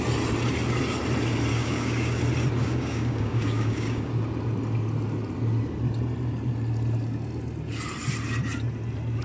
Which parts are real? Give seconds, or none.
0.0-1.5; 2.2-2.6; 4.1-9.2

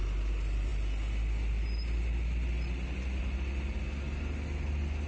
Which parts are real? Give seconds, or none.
0.0-5.1